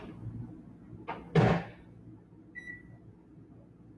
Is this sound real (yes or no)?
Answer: yes